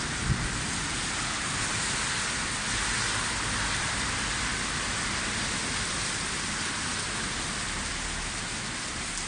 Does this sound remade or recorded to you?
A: recorded